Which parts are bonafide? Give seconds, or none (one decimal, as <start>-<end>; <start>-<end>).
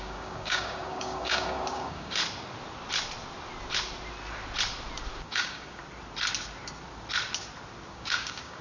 2.2-5.2; 5.8-7.9